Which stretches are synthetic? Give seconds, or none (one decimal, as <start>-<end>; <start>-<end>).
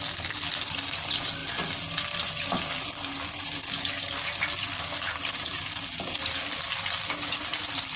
none